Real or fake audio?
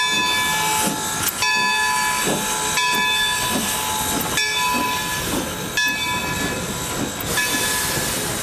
real